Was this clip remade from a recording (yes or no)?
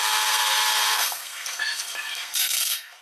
yes